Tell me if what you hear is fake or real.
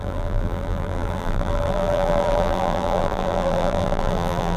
fake